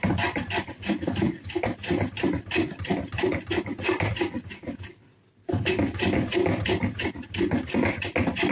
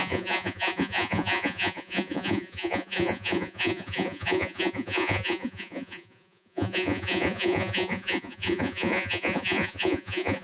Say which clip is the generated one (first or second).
second